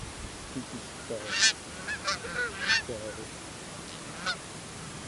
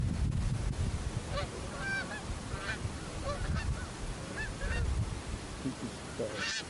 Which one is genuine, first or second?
first